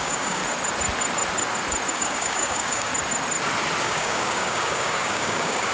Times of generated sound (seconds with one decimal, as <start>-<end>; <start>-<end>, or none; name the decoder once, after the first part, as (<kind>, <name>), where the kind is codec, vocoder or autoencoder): 0.0-0.4 (codec, DAC); 1.9-2.9; 3.8-5.7